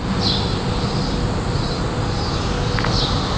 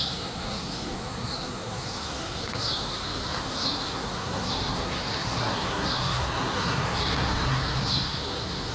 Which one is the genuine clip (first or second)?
first